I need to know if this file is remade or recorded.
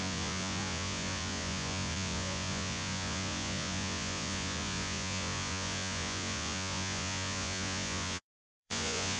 remade